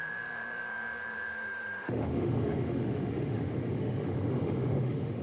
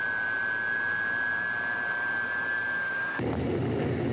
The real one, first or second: second